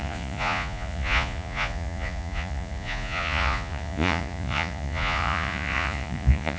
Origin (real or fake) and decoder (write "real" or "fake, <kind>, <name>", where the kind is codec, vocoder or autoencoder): fake, vocoder, Vocos